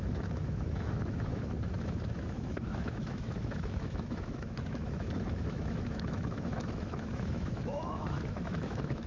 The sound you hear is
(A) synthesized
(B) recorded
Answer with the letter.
A